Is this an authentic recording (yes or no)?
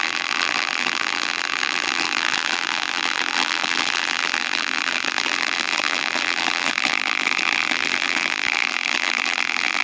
no